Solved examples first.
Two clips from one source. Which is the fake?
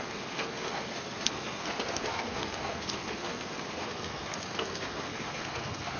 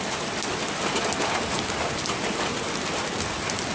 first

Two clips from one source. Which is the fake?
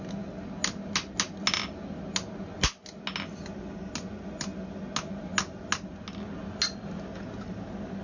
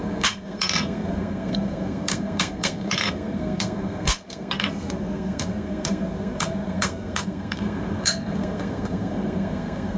second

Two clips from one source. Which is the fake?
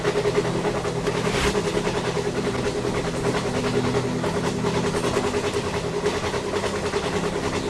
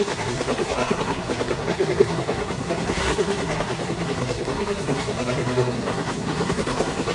second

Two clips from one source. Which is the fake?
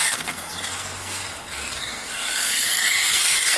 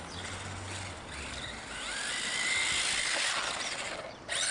first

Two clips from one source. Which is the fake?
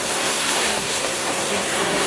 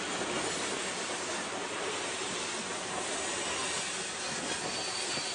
first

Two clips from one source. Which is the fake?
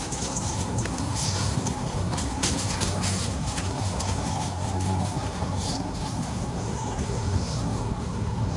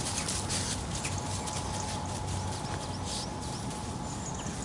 first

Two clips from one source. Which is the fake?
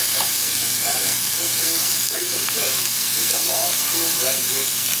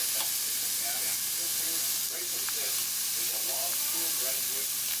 first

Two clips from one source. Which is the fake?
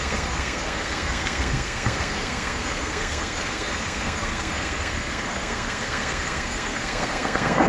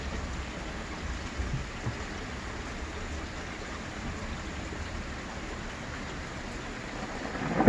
first